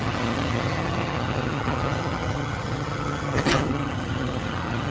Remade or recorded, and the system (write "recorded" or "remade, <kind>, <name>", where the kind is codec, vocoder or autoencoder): remade, vocoder, HiFi-GAN